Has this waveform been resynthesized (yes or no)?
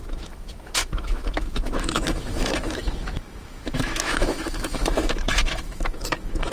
yes